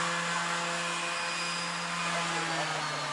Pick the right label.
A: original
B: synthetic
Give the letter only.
A